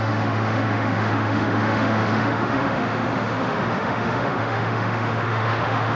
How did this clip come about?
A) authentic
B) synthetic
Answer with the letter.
B